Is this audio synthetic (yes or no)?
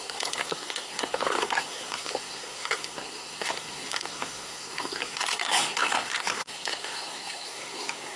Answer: yes